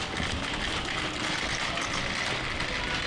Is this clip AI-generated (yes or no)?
no